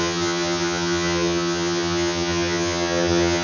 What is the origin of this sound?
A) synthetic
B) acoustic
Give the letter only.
A